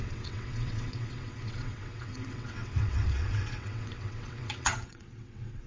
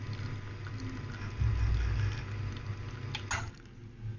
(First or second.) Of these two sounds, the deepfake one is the first